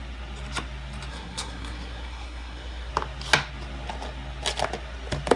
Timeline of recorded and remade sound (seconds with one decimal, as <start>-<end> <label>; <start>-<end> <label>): 0.0-1.1 recorded; 1.1-2.9 remade; 2.9-5.4 recorded